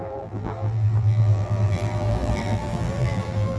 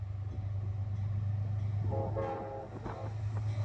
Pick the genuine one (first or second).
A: second